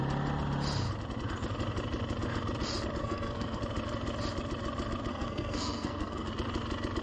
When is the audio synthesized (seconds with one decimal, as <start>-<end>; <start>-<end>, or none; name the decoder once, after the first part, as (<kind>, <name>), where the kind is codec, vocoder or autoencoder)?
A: 3.0-3.6 (codec, SNAC); 5.1-6.3